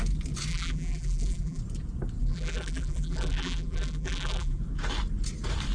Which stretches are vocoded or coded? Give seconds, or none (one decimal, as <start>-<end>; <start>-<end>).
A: 0.5-1.6; 2.2-4.6